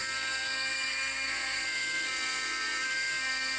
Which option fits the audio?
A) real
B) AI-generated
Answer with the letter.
B